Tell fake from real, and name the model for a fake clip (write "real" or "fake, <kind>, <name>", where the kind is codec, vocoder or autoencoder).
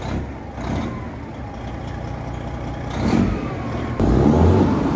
real